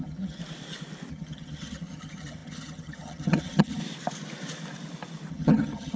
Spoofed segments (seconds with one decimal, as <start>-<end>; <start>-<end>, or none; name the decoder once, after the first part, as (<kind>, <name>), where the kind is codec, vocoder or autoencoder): 0.0-0.4 (vocoder, HiFi-GAN); 1.1-3.8; 5.3-6.0